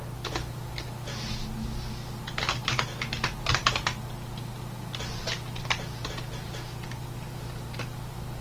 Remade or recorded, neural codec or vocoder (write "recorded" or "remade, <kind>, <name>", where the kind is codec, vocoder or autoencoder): recorded